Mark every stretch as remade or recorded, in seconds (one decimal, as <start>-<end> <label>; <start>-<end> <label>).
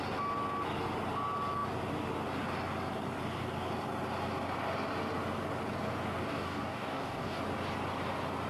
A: 0.0-6.2 recorded; 6.2-7.4 remade; 7.4-8.5 recorded